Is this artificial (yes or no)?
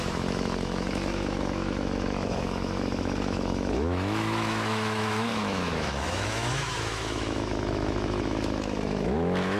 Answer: yes